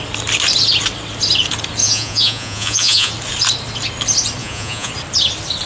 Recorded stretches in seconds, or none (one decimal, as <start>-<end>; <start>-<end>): 0.0-1.8; 3.1-4.4; 4.9-5.7